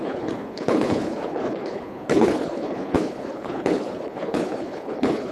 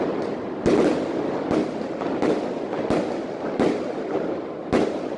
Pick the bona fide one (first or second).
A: second